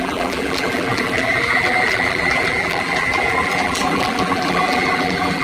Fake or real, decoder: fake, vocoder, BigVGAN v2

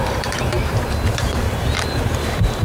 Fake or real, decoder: fake, vocoder, BigVGAN v2